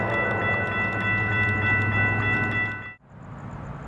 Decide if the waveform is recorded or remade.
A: recorded